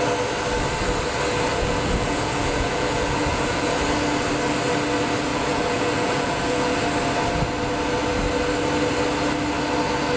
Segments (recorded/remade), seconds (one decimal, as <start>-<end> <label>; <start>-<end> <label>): 0.0-1.5 recorded; 1.5-3.8 remade; 3.8-5.3 recorded; 5.3-6.8 remade; 6.8-10.2 recorded